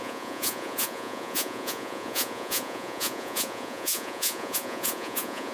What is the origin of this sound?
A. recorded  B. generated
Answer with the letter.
B